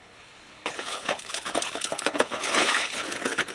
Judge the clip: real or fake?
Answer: fake